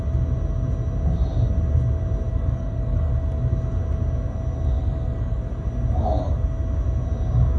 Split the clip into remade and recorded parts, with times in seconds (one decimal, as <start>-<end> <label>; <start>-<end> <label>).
0.0-2.3 recorded; 2.3-3.1 remade; 3.1-4.8 recorded; 4.8-5.5 remade; 5.5-7.6 recorded